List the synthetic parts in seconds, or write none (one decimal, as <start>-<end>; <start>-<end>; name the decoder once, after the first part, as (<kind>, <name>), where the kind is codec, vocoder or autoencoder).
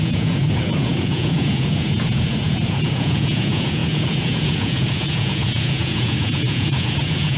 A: 0.0-7.4 (vocoder, Vocos)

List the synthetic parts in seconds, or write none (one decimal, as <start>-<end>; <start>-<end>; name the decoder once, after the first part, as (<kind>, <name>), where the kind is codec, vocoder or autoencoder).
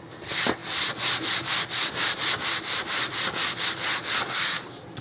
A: none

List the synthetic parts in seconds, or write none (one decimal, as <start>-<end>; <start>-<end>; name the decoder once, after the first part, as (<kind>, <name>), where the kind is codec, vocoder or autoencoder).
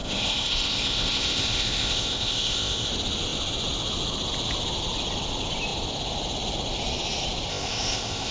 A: 0.0-2.9 (codec, ZipCodec); 7.5-8.3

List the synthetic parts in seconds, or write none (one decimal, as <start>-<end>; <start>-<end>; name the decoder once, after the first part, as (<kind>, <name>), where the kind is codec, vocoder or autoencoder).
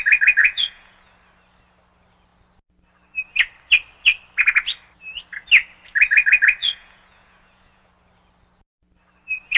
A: 0.4-1.1 (vocoder, Vocos); 6.6-7.9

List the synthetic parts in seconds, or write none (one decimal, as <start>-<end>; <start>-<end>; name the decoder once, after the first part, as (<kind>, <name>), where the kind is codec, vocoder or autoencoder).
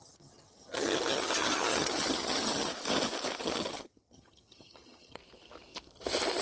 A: 0.0-2.7 (vocoder, HiFi-GAN); 3.4-5.2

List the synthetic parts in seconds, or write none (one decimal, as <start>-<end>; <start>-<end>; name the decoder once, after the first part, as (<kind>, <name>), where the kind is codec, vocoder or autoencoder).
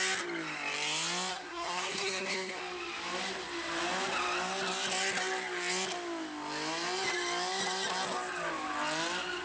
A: 1.3-2.6 (codec, SNAC)